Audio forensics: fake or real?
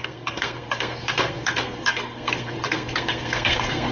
fake